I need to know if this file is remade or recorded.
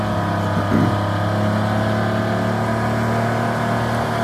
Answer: recorded